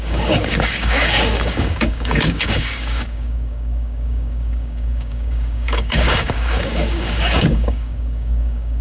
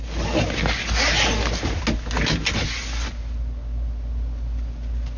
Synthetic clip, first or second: first